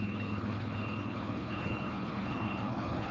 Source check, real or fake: fake